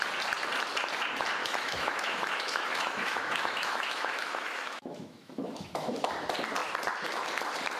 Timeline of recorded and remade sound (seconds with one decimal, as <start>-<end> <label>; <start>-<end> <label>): 0.0-1.4 recorded; 1.4-6.1 remade; 6.1-7.8 recorded